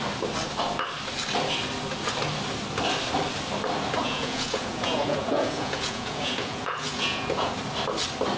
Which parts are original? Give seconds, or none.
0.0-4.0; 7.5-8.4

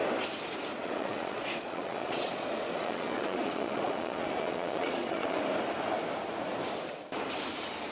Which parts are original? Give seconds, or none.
0.0-0.7; 5.4-7.9

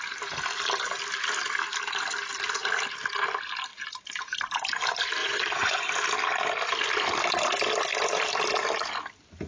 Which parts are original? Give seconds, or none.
0.0-5.2; 5.9-9.5

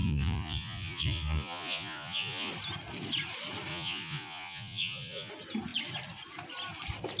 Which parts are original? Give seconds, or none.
2.5-3.7; 5.3-7.2